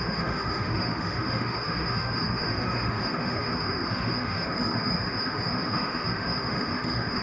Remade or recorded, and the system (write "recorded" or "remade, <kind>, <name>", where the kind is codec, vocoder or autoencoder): remade, autoencoder, DAC-VAE